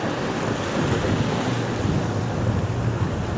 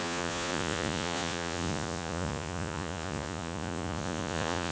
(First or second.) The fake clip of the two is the second